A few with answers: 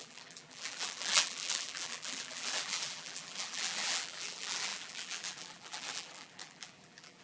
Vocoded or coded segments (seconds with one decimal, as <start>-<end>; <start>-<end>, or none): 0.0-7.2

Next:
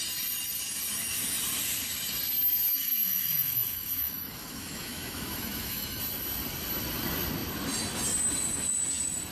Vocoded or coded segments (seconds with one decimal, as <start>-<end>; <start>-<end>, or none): 2.7-6.0

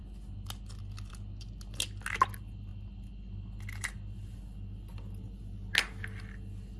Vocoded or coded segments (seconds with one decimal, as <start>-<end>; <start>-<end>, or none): none